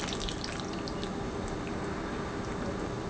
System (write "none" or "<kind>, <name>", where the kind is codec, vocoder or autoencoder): none